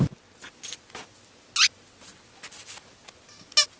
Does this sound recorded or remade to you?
recorded